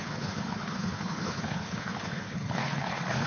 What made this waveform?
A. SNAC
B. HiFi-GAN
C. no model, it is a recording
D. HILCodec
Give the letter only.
D